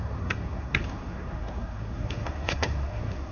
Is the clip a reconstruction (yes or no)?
yes